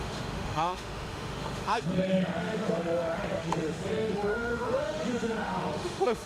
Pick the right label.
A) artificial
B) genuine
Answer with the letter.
A